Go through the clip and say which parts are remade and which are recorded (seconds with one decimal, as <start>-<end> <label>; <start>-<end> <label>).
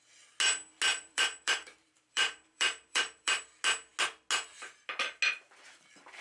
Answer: 0.0-0.9 recorded; 0.9-3.4 remade; 3.4-6.2 recorded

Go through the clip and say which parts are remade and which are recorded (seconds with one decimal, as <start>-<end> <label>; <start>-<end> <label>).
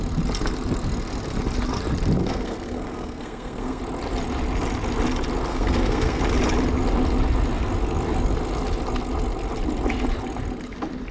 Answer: 0.0-2.2 recorded; 2.2-3.8 remade; 3.8-5.5 recorded; 5.5-6.2 remade; 6.2-11.1 recorded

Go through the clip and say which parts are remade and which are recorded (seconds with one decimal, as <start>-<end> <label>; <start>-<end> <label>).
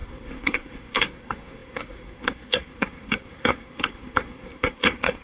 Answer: 0.0-5.2 remade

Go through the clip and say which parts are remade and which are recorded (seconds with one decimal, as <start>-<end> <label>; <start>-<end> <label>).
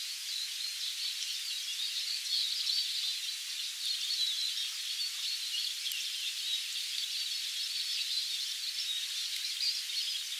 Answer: 0.0-10.4 recorded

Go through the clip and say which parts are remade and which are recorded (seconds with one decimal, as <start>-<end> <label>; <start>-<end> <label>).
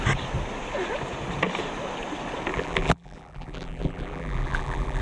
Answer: 0.0-2.5 recorded; 2.5-5.0 remade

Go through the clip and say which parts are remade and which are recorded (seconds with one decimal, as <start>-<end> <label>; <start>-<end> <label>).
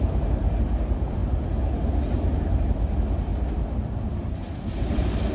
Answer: 0.0-1.2 remade; 1.2-2.4 recorded; 2.4-3.3 remade; 3.3-4.0 recorded; 4.0-5.3 remade